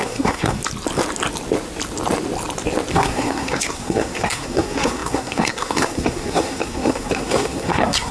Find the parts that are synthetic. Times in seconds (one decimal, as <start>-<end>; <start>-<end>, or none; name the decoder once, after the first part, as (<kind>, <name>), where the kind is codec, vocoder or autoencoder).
0.0-0.6 (codec, SNAC); 2.9-8.1